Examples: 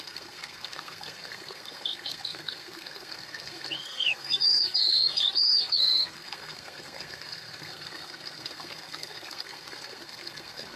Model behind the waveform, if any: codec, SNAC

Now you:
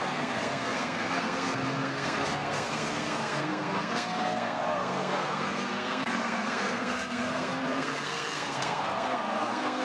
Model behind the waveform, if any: codec, SNAC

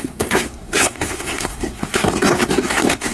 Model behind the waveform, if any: codec, SNAC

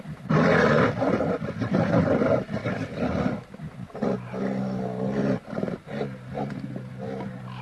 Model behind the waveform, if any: none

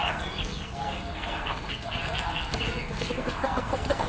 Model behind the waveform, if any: codec, SNAC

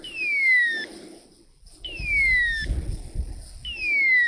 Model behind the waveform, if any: none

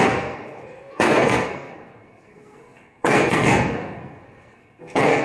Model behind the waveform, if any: codec, SNAC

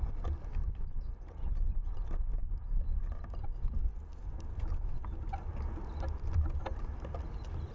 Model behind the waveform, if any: none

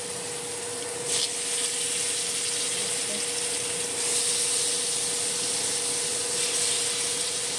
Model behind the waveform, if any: none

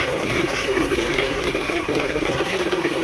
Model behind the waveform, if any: codec, SNAC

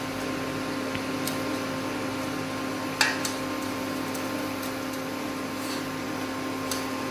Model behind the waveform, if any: none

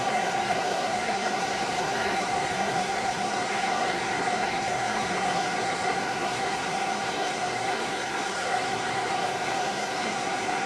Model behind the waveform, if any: codec, SNAC